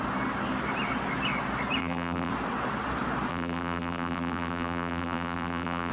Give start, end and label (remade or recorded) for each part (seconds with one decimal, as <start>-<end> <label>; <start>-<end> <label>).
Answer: 0.0-1.8 recorded; 1.8-2.3 remade; 2.3-3.3 recorded; 3.3-5.9 remade